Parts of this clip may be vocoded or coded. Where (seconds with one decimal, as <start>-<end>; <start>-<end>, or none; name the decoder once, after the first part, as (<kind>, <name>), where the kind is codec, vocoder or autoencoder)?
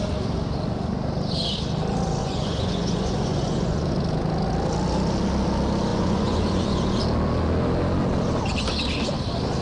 2.2-3.9 (vocoder, Vocos); 5.9-7.0